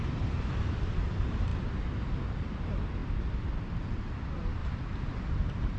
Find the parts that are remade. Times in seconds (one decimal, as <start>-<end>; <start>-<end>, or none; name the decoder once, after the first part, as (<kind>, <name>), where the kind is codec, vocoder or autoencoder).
none